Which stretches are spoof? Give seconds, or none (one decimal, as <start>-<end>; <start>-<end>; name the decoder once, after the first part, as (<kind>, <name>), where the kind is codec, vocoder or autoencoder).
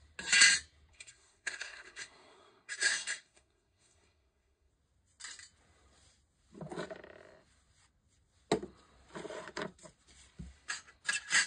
0.9-4.7 (codec, SNAC)